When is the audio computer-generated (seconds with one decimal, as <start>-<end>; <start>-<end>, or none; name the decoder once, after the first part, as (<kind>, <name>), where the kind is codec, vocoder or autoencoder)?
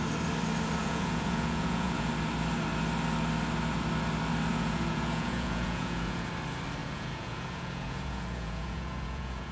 0.8-2.1 (vocoder, Vocos); 4.5-6.3; 6.8-9.5